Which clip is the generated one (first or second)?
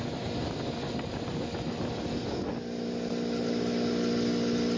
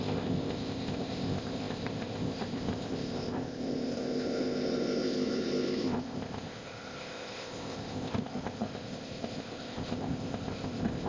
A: second